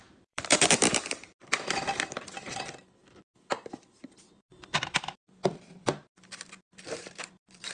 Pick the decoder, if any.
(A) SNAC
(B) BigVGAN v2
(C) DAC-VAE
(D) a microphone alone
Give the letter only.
B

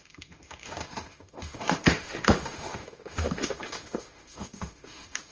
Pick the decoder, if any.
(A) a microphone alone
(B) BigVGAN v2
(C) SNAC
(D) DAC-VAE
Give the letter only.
D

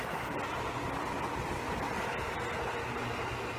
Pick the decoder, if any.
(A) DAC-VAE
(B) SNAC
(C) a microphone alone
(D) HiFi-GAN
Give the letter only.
C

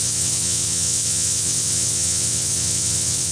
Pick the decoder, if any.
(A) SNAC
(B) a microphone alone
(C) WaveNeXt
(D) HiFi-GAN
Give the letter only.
C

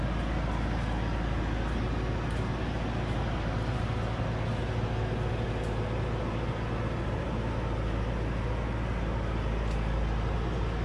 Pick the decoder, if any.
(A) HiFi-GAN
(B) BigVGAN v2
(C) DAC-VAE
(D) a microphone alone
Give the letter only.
D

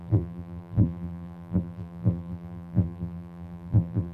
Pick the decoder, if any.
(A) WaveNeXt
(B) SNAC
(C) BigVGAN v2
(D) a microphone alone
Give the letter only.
C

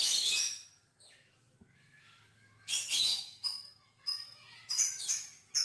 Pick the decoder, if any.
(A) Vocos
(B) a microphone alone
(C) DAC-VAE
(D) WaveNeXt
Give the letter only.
C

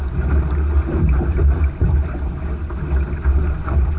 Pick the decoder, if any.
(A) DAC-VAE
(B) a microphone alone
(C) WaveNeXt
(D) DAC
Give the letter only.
B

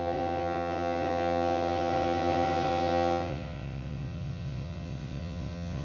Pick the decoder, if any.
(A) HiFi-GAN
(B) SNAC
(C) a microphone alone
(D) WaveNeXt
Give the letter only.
D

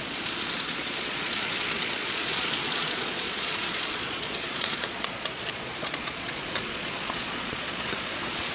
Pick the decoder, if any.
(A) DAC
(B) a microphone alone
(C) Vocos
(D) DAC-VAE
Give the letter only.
C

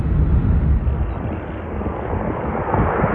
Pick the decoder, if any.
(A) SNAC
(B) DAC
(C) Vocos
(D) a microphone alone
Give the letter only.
D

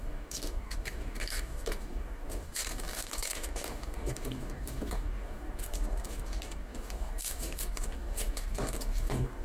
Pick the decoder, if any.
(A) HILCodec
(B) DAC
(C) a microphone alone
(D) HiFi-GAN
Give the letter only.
B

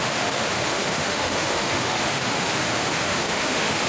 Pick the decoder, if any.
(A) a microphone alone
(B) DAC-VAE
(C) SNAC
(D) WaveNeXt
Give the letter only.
B